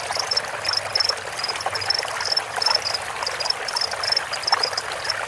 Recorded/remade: remade